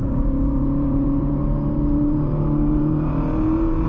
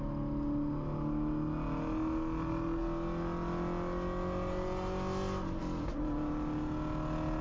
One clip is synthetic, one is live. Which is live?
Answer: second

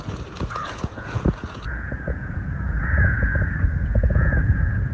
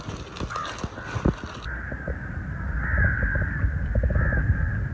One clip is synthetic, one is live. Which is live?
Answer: second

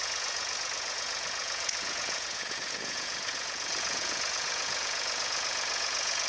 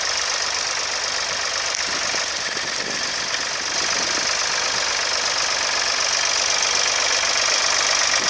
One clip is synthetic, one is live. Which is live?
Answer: second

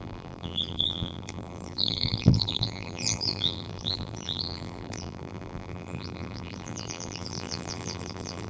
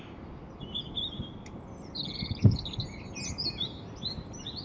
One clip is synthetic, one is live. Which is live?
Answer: second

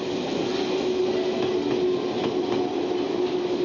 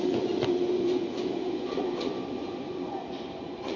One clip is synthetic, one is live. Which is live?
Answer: first